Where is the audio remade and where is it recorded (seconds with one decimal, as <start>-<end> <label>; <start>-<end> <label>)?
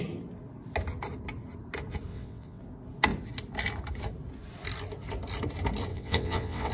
0.0-2.1 recorded; 2.1-2.6 remade; 2.6-5.9 recorded; 5.9-6.7 remade